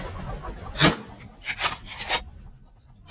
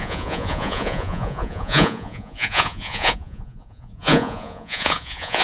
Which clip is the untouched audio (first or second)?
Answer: first